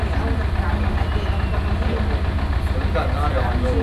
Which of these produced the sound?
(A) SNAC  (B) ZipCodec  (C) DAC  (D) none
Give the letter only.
D